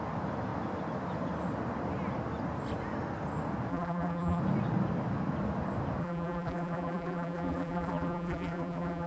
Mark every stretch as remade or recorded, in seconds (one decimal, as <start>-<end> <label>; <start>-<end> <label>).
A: 0.0-3.7 recorded; 3.7-4.4 remade; 4.4-6.0 recorded; 6.0-9.1 remade